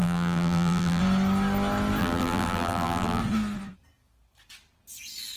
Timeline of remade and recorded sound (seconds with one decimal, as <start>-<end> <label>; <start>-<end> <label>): 0.0-1.0 remade; 1.0-2.0 recorded; 2.0-3.2 remade; 3.2-5.4 recorded